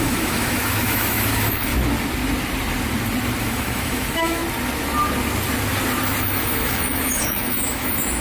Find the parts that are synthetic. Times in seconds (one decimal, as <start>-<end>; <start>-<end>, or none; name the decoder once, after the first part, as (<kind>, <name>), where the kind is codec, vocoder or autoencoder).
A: 0.0-1.7 (autoencoder, DAC-VAE); 3.4-4.4; 6.2-8.2